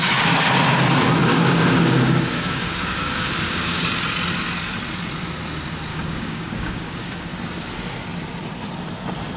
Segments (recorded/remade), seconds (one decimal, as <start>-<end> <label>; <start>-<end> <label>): 0.0-1.3 recorded; 1.3-3.8 remade; 3.8-5.9 recorded; 5.9-7.3 remade; 7.3-9.4 recorded